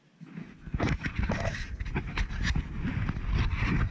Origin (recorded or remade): recorded